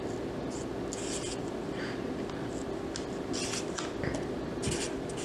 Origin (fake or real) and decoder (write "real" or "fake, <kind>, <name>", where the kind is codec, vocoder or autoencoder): real